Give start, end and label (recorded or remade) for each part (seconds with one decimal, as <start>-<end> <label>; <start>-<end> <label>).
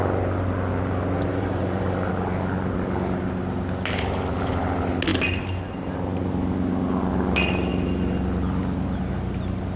0.0-1.3 recorded; 1.3-2.1 remade; 2.1-9.8 recorded